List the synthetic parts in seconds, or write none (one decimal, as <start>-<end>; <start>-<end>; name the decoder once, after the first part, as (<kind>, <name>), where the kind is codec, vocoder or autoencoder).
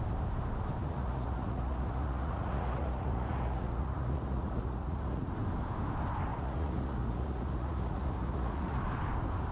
0.8-5.3 (vocoder, Vocos); 6.3-8.8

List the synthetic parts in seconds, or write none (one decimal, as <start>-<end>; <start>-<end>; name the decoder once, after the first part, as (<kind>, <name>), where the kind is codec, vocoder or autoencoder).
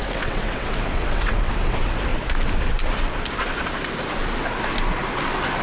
0.0-2.1 (vocoder, WaveNeXt)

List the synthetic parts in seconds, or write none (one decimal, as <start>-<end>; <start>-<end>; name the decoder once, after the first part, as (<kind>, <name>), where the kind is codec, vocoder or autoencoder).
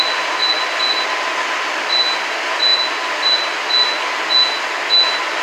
none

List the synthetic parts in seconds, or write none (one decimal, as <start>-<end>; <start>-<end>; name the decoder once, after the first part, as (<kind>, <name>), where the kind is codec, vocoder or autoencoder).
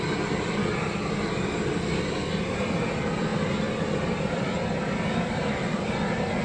none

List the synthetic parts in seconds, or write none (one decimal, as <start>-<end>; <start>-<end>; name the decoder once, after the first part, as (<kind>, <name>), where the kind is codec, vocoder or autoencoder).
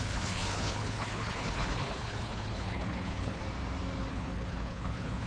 0.0-3.4 (codec, HILCodec); 4.1-5.3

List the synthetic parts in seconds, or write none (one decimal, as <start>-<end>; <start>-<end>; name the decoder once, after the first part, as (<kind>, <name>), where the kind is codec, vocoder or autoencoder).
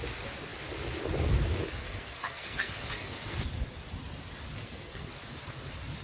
1.8-3.4 (codec, SNAC); 4.6-5.1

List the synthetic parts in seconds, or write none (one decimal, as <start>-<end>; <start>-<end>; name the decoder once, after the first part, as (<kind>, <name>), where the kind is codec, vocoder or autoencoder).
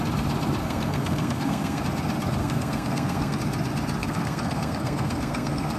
0.6-1.8 (codec, SNAC); 2.4-3.4; 4.0-5.8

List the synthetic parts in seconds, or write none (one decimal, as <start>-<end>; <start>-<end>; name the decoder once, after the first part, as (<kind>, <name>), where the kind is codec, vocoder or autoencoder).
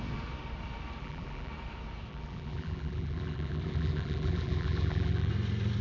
1.0-1.5 (vocoder, BigVGAN v2); 2.1-5.3